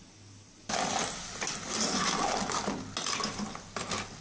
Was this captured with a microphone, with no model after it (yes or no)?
yes